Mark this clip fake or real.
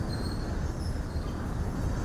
real